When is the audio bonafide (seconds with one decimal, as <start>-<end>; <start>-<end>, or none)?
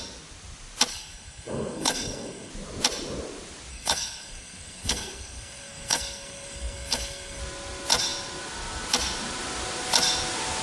0.0-0.9; 2.5-3.7; 7.4-10.6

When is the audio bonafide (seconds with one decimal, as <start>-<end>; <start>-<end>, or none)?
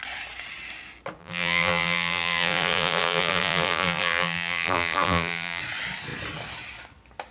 0.0-1.2; 5.6-7.3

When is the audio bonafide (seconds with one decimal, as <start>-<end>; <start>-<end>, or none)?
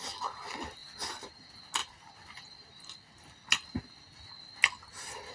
0.0-0.8; 1.3-1.8; 3.8-5.3